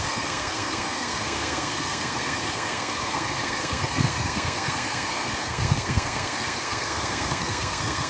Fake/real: fake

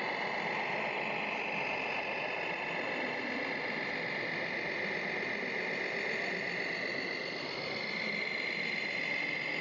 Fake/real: real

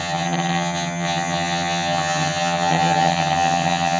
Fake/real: fake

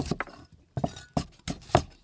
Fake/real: real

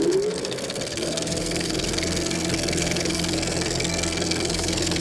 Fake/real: fake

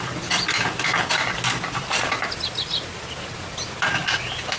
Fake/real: real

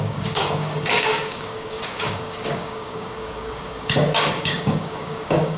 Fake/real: fake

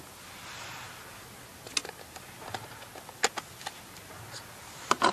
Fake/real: real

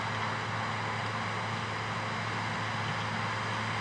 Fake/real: real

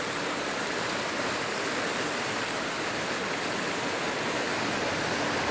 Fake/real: real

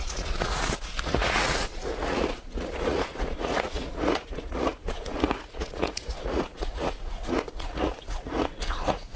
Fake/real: fake